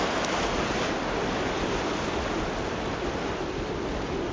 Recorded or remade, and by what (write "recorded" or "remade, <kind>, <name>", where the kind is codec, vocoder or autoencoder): recorded